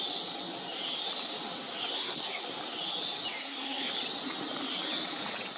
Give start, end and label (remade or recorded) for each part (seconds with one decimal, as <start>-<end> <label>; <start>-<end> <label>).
0.0-1.9 recorded; 1.9-2.4 remade; 2.4-3.4 recorded; 3.4-3.9 remade; 3.9-5.6 recorded

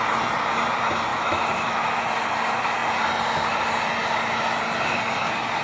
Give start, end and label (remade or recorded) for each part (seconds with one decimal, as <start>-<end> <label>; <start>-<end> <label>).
0.0-1.1 recorded; 1.1-2.0 remade; 2.0-5.6 recorded

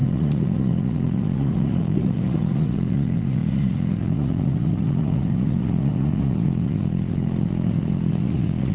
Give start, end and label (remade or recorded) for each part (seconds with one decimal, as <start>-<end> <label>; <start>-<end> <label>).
0.0-8.7 remade

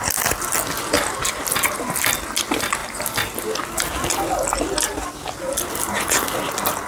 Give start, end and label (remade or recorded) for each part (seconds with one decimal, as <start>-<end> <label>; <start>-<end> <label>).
0.0-6.9 recorded